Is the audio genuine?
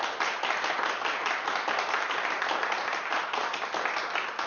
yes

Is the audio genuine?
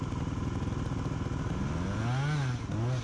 yes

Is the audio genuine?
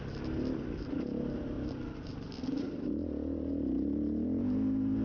yes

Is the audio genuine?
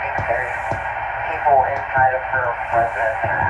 yes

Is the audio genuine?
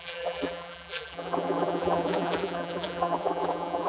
no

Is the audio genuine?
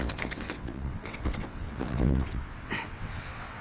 no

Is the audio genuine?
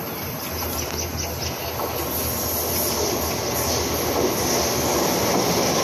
yes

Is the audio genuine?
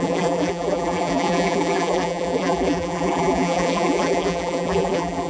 no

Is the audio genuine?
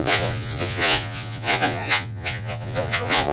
no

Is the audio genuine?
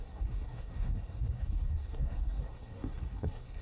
no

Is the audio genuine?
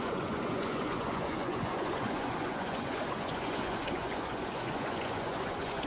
no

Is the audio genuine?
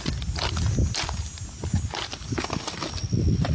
yes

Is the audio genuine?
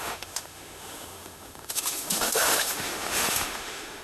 no